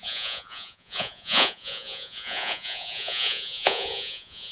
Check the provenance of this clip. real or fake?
fake